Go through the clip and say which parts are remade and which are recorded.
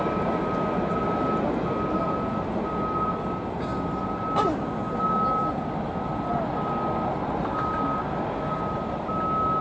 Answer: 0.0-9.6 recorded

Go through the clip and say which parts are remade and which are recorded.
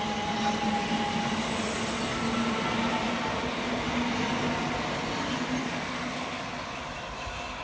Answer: 0.0-5.6 recorded; 5.6-6.4 remade; 6.4-7.6 recorded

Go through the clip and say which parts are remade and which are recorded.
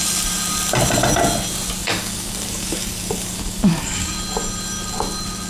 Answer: 0.0-1.8 recorded; 1.8-4.1 remade; 4.1-5.5 recorded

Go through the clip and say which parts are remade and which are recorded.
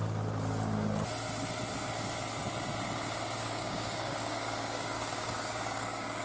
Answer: 0.0-3.4 recorded; 3.4-6.2 remade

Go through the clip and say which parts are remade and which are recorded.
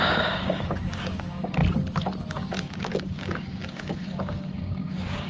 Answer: 0.0-1.6 remade; 1.6-2.3 recorded; 2.3-5.3 remade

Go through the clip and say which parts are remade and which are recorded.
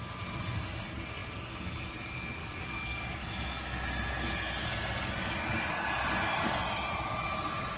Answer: 0.0-2.4 recorded; 2.4-3.2 remade; 3.2-4.6 recorded; 4.6-6.6 remade; 6.6-7.8 recorded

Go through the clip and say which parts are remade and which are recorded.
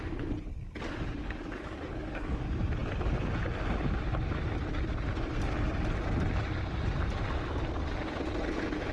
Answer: 0.0-1.2 recorded; 1.2-2.4 remade; 2.4-8.9 recorded